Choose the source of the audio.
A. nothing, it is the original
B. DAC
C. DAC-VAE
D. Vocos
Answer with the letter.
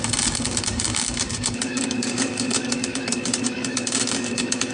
B